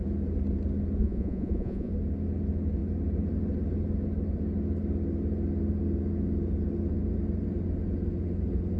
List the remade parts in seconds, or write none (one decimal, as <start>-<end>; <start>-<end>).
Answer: 1.0-1.9